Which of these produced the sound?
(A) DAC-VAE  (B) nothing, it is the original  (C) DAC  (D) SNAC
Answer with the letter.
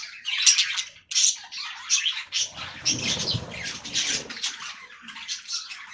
B